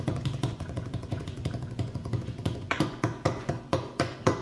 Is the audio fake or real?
fake